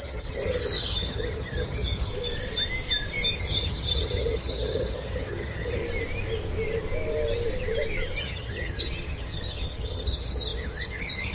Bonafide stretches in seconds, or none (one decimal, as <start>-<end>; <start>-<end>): 2.1-3.4; 5.8-8.2